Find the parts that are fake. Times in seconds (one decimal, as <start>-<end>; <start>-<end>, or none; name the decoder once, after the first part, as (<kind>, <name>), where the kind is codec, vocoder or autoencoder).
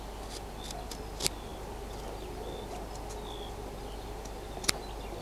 none